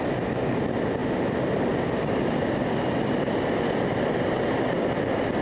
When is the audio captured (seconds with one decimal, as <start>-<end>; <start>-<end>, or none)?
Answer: 0.0-5.4